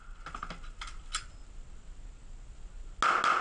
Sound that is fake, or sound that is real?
real